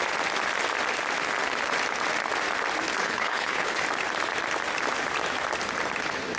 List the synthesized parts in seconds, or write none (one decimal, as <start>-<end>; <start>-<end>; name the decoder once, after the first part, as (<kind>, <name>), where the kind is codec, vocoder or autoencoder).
3.0-3.8 (codec, HILCodec)